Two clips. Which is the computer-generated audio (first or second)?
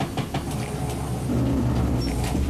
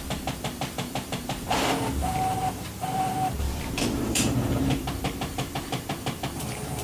second